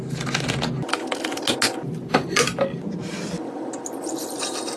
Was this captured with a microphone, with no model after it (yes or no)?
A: yes